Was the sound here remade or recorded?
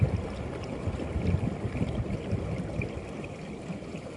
recorded